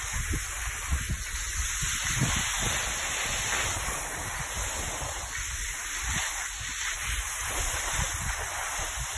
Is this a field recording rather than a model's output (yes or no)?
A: yes